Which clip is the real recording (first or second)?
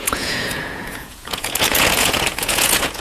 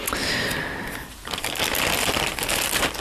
second